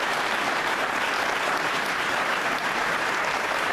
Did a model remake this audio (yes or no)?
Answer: yes